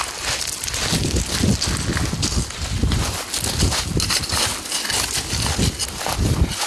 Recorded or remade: recorded